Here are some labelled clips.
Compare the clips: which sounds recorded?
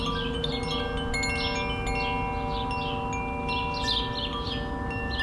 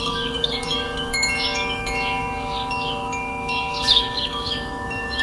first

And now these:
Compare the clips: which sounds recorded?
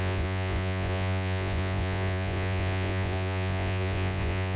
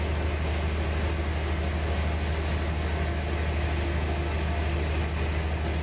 second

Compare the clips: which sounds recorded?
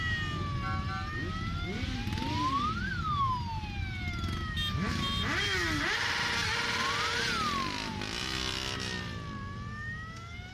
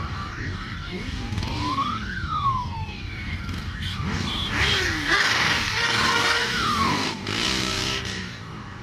first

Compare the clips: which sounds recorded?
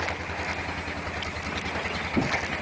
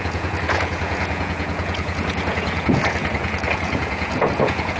first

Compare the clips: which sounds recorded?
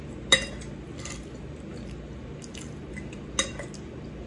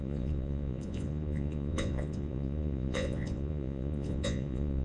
first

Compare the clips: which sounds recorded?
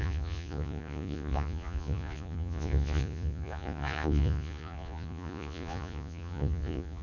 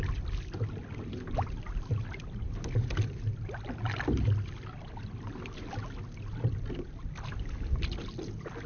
second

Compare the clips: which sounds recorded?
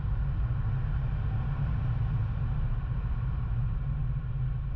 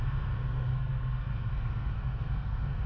first